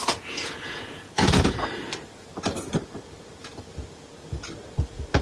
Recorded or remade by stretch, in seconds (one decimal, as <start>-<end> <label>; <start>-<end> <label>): 0.0-1.6 remade; 1.6-5.2 recorded